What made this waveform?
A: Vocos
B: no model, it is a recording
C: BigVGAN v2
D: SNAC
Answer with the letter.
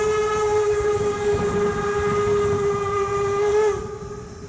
B